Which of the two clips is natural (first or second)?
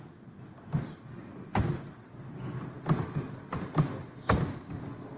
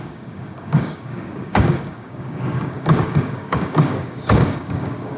first